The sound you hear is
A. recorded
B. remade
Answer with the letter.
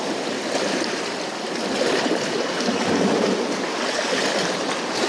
A